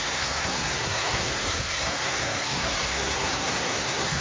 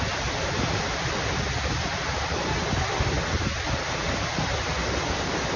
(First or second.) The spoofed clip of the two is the first